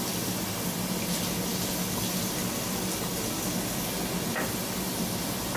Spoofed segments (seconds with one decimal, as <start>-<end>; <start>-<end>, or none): none